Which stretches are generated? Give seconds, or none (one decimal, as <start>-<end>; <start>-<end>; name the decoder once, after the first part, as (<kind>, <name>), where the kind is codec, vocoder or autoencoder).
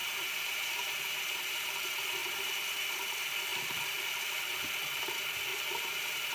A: 0.0-1.7 (vocoder, BigVGAN v2); 5.5-6.3